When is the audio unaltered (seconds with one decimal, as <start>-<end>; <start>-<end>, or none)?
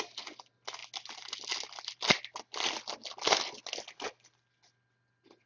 0.0-5.5